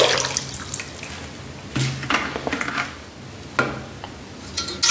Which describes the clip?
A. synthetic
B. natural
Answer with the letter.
B